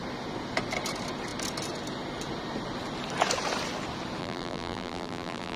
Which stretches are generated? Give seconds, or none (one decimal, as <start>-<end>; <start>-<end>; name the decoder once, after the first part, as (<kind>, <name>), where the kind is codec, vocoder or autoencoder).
4.2-5.6 (vocoder, BigVGAN v2)